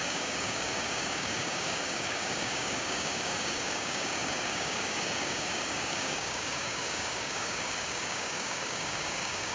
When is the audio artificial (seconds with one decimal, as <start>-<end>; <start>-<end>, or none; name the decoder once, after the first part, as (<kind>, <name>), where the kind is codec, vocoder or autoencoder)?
0.0-9.5 (codec, DAC)